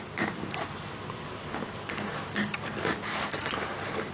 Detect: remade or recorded recorded